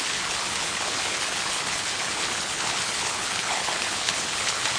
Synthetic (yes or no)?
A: yes